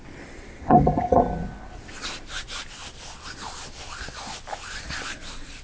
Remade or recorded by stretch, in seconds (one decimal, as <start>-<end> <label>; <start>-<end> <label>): 0.0-0.6 recorded; 0.6-1.2 remade; 1.2-5.6 recorded

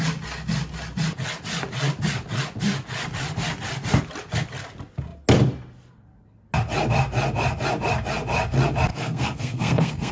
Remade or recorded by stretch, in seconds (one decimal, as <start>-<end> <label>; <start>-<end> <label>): 0.0-8.9 recorded; 8.9-10.1 remade

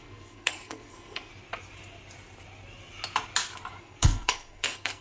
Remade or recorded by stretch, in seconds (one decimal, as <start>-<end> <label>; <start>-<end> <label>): 0.0-1.3 remade; 1.3-3.8 recorded; 3.8-5.0 remade